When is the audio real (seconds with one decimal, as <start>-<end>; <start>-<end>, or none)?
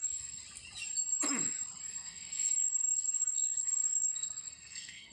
0.4-1.8